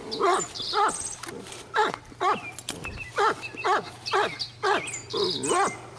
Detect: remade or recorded recorded